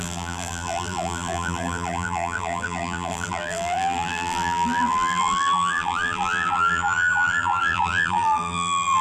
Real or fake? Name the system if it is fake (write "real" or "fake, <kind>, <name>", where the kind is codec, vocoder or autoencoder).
fake, vocoder, BigVGAN v2